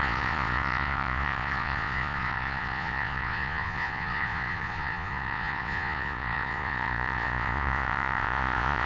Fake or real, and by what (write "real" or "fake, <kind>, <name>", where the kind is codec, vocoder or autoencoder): fake, vocoder, Vocos